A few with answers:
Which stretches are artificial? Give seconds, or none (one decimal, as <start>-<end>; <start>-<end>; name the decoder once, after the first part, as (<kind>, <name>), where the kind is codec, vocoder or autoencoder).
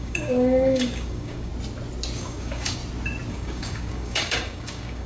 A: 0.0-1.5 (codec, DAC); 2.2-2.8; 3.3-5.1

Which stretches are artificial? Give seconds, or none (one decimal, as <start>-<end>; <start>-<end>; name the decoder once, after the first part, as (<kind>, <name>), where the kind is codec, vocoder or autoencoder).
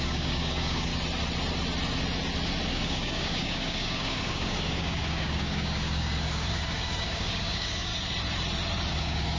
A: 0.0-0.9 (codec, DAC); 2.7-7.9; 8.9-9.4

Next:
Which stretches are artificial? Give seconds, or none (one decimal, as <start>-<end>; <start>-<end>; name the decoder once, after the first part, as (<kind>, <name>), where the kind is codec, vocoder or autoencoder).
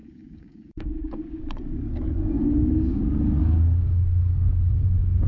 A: 0.0-1.4 (codec, DAC); 2.4-3.0; 3.4-5.3